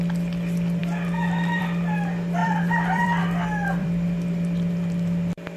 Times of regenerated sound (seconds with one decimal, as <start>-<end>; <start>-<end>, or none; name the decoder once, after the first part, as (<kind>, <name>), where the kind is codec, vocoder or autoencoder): 0.8-1.6 (vocoder, BigVGAN v2); 2.4-3.2; 3.8-5.6